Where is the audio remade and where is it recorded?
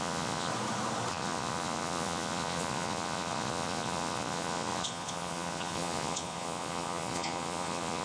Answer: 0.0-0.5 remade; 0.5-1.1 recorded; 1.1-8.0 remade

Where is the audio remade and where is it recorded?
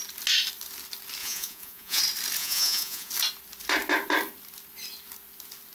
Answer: 0.0-1.2 recorded; 1.2-2.0 remade; 2.0-2.4 recorded; 2.4-3.1 remade; 3.1-5.7 recorded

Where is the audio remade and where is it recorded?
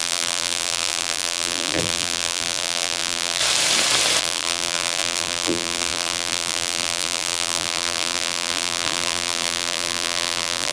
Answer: 0.0-3.4 remade; 3.4-4.2 recorded; 4.2-10.7 remade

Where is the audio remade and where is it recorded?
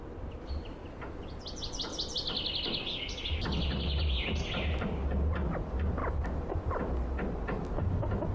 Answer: 0.0-8.3 recorded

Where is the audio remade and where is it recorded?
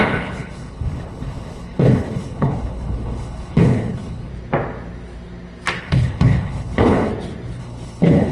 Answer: 0.0-4.3 remade; 4.3-5.8 recorded; 5.8-7.1 remade; 7.1-7.6 recorded; 7.6-8.3 remade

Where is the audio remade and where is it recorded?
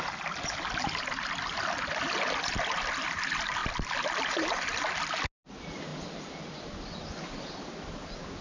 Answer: 0.0-3.6 recorded; 3.6-4.9 remade; 4.9-8.4 recorded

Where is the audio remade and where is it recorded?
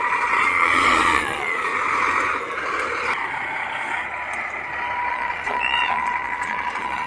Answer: 0.0-1.7 remade; 1.7-5.1 recorded; 5.1-7.1 remade